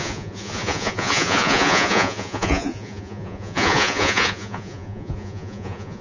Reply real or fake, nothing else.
fake